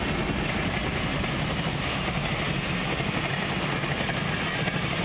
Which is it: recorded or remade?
recorded